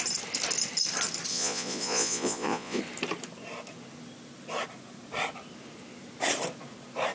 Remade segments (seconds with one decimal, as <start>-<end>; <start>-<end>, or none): 1.3-2.8